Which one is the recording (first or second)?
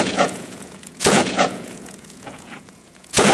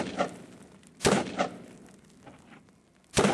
second